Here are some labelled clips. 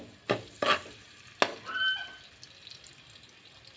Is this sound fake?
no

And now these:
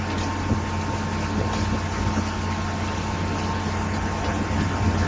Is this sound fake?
no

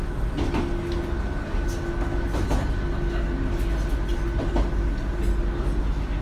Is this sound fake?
no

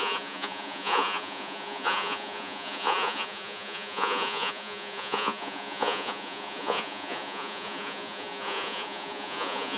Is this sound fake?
yes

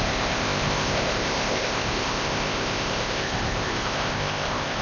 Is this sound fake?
yes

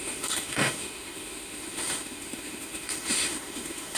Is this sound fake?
yes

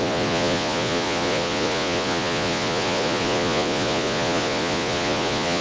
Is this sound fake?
yes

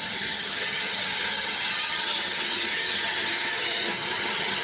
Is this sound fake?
yes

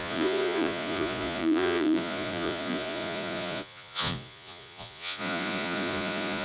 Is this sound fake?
yes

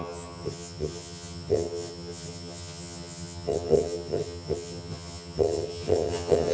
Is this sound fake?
yes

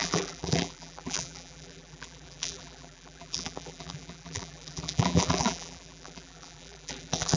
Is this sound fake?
yes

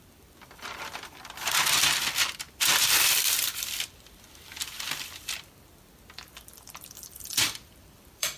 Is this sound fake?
yes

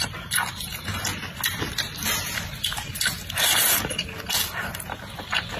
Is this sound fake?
no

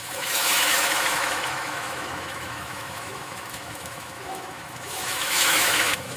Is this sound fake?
yes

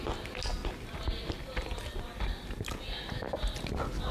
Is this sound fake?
no